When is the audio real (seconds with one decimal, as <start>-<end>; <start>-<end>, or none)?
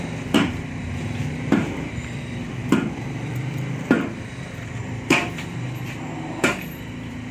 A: none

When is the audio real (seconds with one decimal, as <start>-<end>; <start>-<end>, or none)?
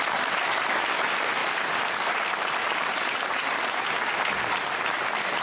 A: 0.0-1.4; 4.1-5.4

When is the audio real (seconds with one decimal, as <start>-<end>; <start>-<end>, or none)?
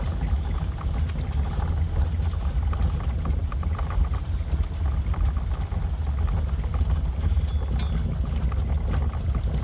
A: 0.0-3.4; 4.3-6.7; 7.5-9.6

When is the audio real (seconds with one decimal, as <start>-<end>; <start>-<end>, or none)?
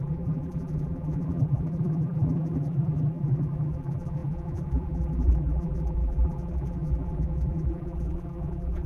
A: none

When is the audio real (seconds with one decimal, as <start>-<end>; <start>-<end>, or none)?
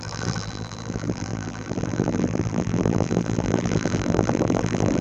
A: none